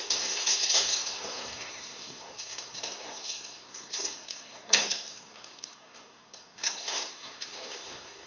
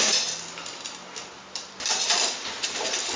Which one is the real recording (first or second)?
second